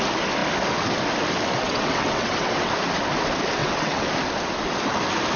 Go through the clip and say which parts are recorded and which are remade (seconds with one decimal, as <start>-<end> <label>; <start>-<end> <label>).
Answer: 0.0-1.6 recorded; 1.6-2.7 remade; 2.7-3.6 recorded; 3.6-4.1 remade; 4.1-5.4 recorded

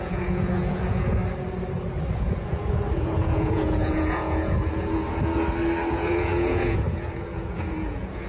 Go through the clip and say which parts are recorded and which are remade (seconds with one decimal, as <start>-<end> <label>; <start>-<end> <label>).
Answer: 0.0-1.2 remade; 1.2-2.1 recorded; 2.1-5.0 remade; 5.0-5.9 recorded; 5.9-8.3 remade

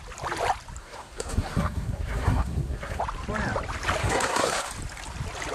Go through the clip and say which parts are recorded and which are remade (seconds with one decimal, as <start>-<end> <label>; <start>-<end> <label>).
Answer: 0.0-0.8 recorded; 0.8-3.0 remade; 3.0-4.0 recorded; 4.0-4.7 remade; 4.7-5.5 recorded

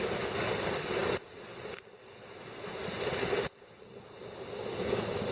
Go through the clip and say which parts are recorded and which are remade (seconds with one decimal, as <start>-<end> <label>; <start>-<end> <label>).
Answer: 0.0-5.3 recorded

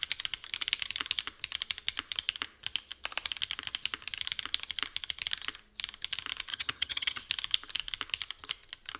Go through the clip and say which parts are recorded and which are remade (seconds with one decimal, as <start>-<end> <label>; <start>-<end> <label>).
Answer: 0.0-6.5 recorded; 6.5-7.2 remade; 7.2-9.0 recorded